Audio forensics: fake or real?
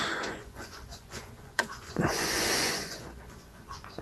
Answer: fake